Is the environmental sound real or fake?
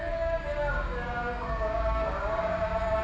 fake